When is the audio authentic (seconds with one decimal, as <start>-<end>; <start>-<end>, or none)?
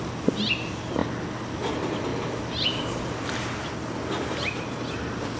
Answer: 0.0-5.4